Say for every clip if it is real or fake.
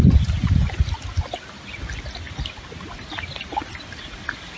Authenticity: real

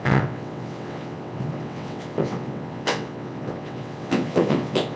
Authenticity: fake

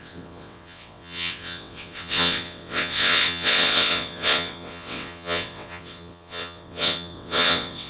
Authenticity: fake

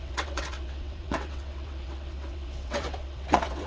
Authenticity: fake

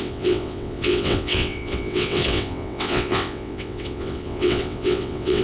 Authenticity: fake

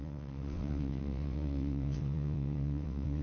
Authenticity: fake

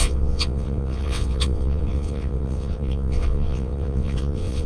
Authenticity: fake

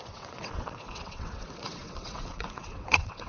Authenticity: fake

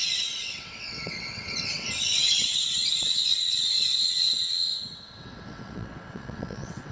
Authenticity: fake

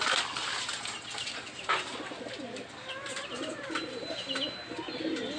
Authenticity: real